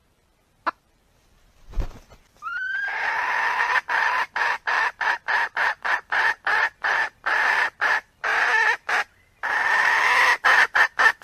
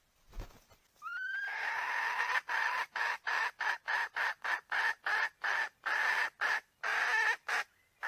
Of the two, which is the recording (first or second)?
second